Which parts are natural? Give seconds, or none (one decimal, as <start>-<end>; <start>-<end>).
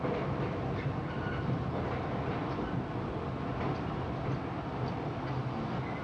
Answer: 0.0-6.0